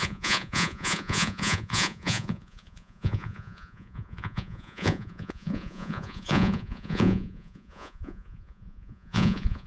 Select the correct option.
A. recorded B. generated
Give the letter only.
B